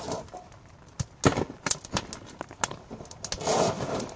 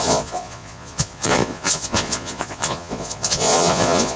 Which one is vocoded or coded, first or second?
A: second